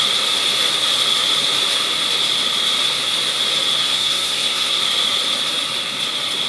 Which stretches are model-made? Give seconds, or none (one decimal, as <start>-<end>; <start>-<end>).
3.8-4.8